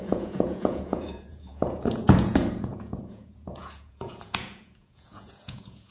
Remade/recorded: remade